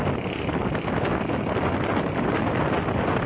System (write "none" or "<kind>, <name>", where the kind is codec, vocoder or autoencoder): none